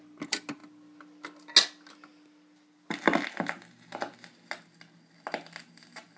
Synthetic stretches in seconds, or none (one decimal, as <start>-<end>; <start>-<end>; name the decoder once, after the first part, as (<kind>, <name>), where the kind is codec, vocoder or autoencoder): none